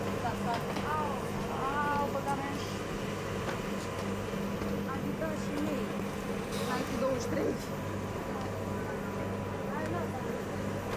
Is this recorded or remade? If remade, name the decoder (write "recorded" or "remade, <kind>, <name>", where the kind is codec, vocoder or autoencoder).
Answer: recorded